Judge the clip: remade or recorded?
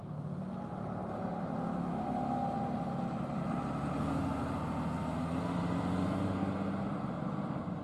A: recorded